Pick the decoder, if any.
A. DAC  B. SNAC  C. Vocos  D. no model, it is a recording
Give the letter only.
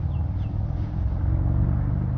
D